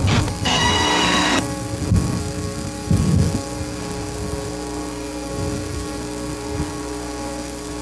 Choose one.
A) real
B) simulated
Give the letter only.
B